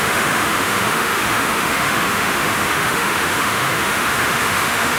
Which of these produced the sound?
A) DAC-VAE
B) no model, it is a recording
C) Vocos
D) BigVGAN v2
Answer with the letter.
A